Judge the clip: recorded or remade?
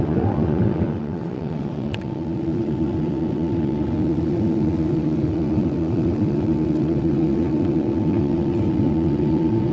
remade